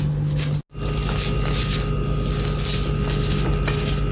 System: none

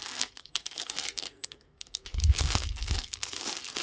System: codec, SNAC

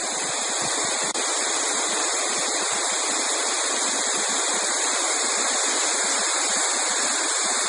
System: none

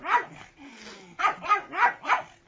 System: none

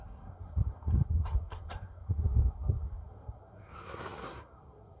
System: codec, SNAC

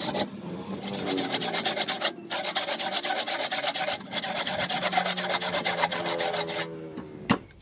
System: none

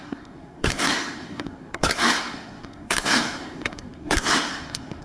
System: codec, SNAC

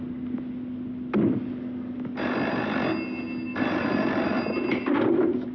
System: none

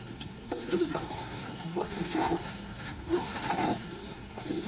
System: codec, SNAC